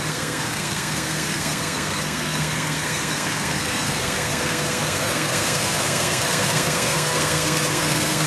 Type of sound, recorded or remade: remade